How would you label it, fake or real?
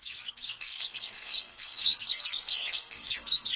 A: fake